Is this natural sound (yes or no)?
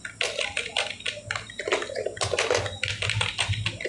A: yes